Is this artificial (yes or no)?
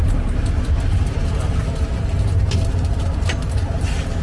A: no